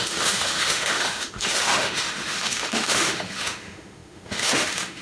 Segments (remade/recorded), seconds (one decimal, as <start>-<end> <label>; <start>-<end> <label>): 0.0-5.0 remade